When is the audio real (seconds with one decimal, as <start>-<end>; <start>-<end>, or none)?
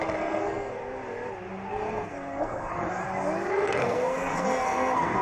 0.8-1.7; 2.8-3.5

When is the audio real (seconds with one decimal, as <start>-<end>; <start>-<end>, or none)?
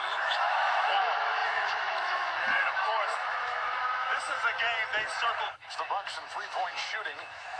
4.3-5.5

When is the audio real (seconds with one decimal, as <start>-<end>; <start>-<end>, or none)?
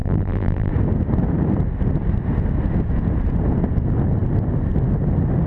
0.7-5.5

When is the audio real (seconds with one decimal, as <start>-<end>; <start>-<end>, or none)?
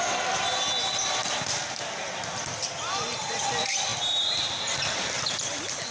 0.0-5.9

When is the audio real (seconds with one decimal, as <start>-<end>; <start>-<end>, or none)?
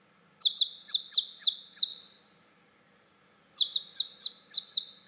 0.0-1.9; 4.0-5.1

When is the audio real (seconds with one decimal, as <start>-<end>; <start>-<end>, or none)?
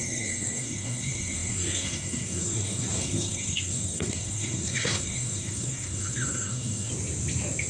6.9-7.7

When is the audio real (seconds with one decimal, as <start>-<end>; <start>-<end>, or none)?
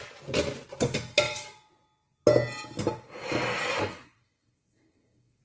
0.0-3.8